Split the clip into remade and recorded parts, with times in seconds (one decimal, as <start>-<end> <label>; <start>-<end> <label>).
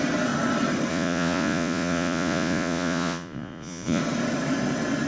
0.0-0.9 recorded; 0.9-4.0 remade; 4.0-5.1 recorded